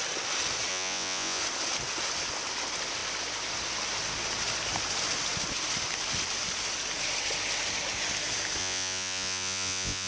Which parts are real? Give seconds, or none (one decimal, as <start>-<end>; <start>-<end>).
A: 0.0-0.7; 1.4-8.6